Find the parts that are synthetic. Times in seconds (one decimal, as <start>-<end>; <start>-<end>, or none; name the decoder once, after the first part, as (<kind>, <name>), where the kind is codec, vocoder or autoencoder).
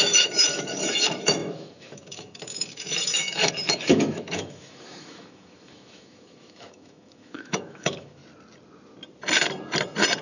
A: 0.0-8.2 (autoencoder, DAC-VAE)